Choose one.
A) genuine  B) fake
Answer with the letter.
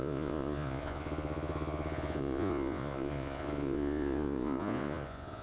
B